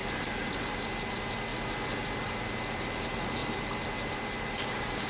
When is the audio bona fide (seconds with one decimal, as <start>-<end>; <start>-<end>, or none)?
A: 0.0-4.6